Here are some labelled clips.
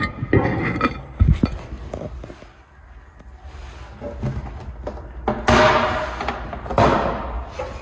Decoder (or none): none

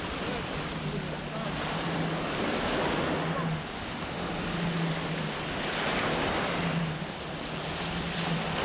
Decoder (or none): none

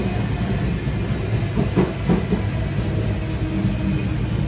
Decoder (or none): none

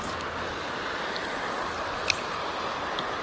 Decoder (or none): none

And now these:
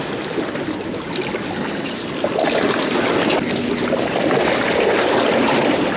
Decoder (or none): none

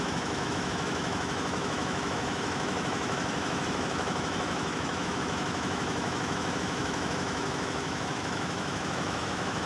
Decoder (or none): autoencoder, DAC-VAE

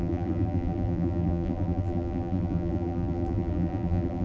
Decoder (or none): vocoder, BigVGAN v2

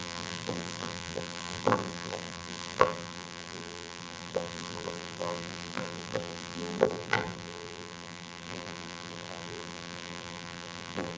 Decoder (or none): vocoder, BigVGAN v2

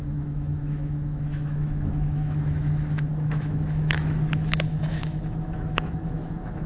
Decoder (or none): autoencoder, DAC-VAE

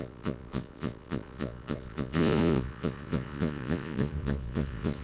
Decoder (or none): vocoder, Vocos